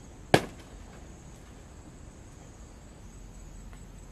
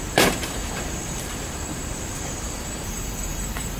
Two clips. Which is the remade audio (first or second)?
second